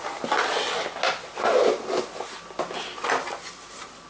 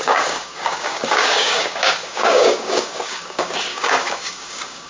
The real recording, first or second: first